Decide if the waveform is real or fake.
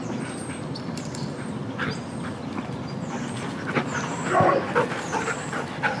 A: real